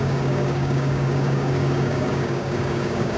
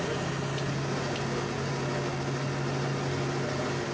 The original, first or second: second